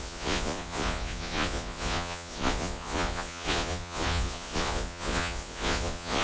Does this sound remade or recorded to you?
remade